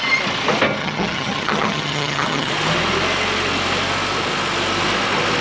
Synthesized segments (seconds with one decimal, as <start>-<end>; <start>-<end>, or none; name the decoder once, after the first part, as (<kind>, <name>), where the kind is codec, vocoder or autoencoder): 0.8-2.5 (vocoder, HiFi-GAN)